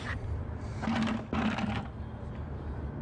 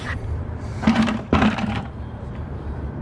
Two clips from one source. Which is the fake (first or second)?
second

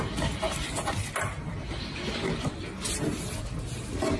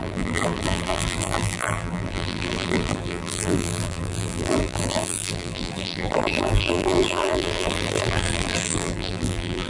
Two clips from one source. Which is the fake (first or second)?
second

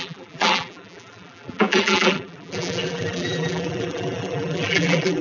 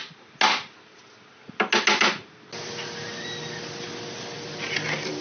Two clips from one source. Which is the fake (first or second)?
first